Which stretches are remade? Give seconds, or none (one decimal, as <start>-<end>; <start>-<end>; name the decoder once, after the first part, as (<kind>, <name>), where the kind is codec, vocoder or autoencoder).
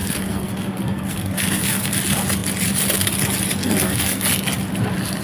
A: 0.0-1.9 (codec, SNAC); 3.6-4.2